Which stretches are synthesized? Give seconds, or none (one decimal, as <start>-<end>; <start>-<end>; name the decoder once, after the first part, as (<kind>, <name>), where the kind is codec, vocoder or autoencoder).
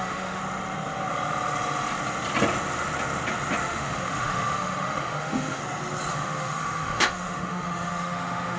0.0-0.4 (autoencoder, DAC-VAE); 3.6-5.6; 6.1-8.6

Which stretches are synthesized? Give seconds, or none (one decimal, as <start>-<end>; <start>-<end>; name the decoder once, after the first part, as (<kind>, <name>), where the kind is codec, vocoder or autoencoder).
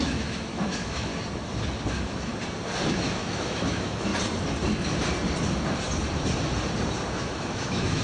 0.0-1.1 (autoencoder, DAC-VAE); 1.9-2.3; 2.9-4.1; 7.1-8.0